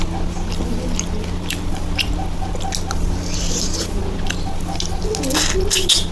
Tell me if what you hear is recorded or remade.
recorded